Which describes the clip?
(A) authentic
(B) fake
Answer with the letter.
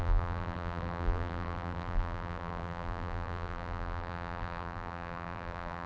B